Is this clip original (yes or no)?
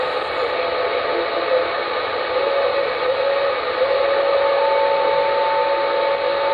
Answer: yes